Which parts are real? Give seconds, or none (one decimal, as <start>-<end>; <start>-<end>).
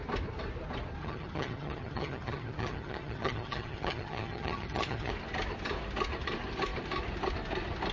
0.0-1.0; 5.1-7.9